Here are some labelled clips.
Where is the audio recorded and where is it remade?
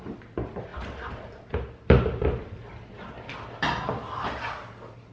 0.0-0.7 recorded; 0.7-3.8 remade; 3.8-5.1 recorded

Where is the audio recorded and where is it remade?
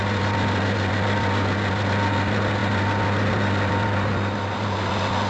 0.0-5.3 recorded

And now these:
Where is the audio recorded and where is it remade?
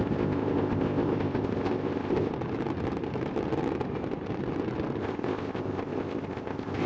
0.0-2.3 remade; 2.3-5.0 recorded; 5.0-6.9 remade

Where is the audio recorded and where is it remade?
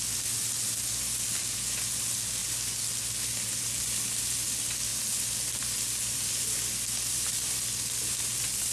0.0-8.7 recorded